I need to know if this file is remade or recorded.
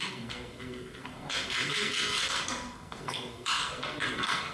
remade